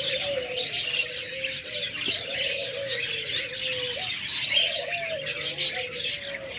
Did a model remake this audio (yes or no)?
no